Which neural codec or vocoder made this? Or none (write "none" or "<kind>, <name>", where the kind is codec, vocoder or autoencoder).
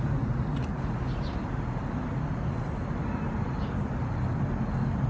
none